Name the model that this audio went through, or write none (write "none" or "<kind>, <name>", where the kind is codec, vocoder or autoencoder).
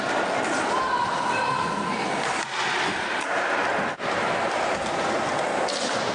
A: none